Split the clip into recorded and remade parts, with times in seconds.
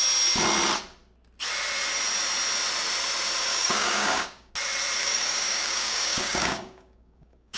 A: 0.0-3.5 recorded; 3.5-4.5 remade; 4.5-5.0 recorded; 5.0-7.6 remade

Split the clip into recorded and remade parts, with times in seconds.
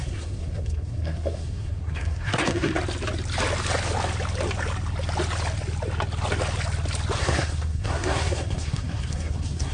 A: 0.0-2.7 remade; 2.7-7.2 recorded; 7.2-9.7 remade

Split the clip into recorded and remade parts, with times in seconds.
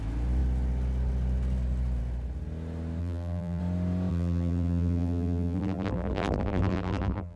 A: 0.0-3.0 recorded; 3.0-3.6 remade; 3.6-4.1 recorded; 4.1-7.4 remade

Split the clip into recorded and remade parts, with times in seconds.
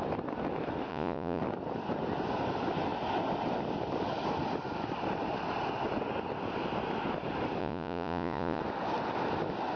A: 0.0-0.9 recorded; 0.9-1.4 remade; 1.4-7.6 recorded; 7.6-8.6 remade; 8.6-9.8 recorded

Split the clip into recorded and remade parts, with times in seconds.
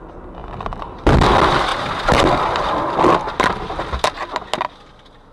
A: 0.0-5.3 recorded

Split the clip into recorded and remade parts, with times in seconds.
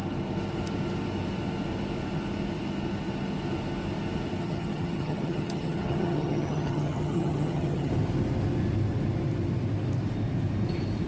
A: 0.0-4.4 recorded; 4.4-7.9 remade; 7.9-11.1 recorded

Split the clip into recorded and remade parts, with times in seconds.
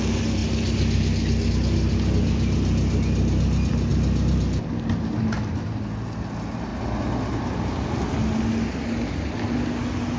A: 0.0-10.2 recorded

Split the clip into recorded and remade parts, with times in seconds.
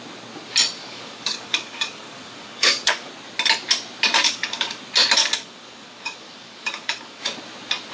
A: 0.0-0.8 recorded; 0.8-3.1 remade; 3.1-4.2 recorded; 4.2-4.8 remade; 4.8-5.2 recorded; 5.2-7.2 remade; 7.2-7.9 recorded